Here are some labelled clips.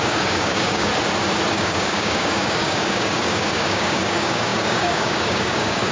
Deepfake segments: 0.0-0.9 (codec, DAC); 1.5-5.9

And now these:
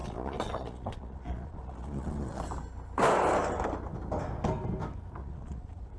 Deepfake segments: 0.0-2.4 (vocoder, Vocos); 5.2-6.0

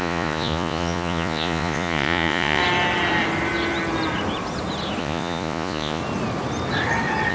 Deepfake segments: 0.0-2.6 (vocoder, Vocos); 5.0-6.0

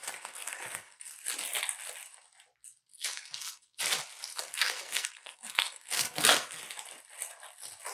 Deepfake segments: 0.0-1.1 (codec, SNAC); 2.9-3.8; 4.3-6.6